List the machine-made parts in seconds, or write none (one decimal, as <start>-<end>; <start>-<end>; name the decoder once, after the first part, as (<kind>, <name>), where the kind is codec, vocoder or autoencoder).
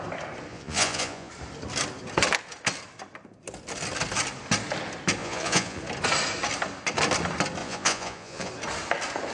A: 0.5-1.3 (vocoder, Vocos); 5.2-5.8; 7.6-8.5